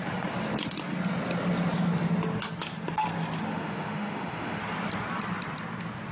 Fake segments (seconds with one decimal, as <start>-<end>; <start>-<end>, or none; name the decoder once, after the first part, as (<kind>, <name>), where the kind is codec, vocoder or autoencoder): 3.5-4.6 (autoencoder, DAC-VAE)